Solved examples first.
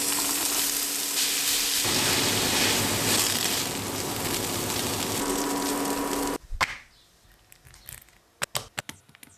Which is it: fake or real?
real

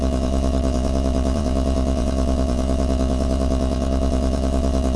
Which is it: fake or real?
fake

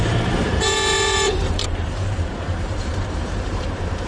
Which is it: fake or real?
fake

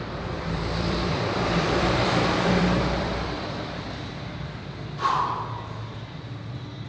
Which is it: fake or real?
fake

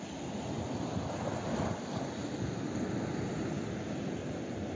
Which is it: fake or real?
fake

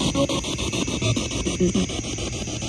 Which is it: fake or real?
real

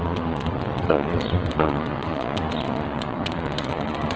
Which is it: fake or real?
fake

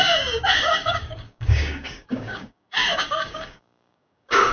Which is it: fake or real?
fake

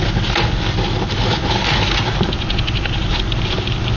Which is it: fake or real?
real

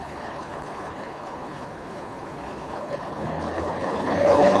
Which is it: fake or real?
fake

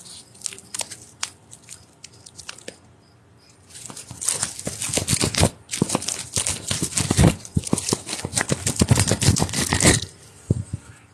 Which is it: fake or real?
real